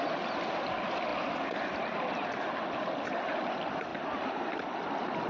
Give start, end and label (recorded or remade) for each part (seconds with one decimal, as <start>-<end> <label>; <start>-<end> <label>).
0.0-5.3 recorded